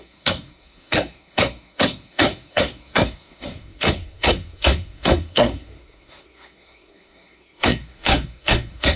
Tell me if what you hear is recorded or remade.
remade